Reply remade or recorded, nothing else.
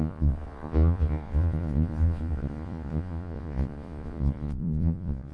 remade